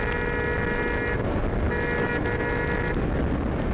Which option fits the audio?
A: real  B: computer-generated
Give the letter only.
A